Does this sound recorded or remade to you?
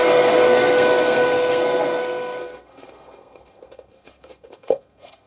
remade